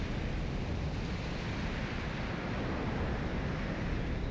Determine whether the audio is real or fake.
real